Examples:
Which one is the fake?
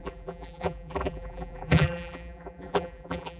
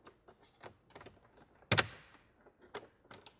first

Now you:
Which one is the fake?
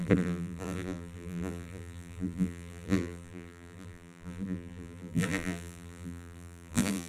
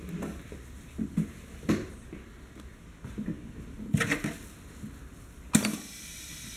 first